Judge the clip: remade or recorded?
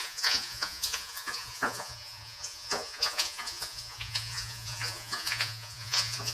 remade